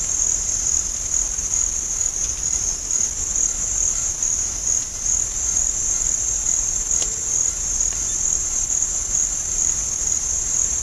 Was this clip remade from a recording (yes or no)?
yes